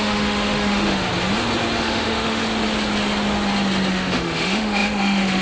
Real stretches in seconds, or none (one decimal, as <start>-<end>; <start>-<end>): 1.1-1.8; 2.4-3.9

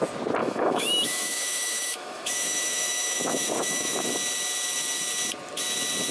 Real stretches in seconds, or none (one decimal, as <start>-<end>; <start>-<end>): 0.0-0.4; 4.1-6.1

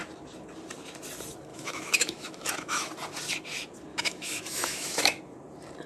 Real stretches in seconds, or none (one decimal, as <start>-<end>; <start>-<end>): 0.0-1.5; 2.9-3.9; 5.2-5.9